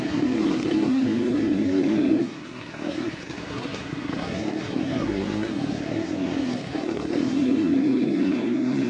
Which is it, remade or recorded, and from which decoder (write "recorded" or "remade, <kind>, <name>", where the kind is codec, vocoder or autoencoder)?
remade, codec, SNAC